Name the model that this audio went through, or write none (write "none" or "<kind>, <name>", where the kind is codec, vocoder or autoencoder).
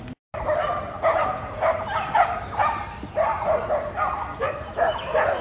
none